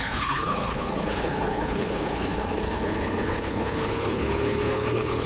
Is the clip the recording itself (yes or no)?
no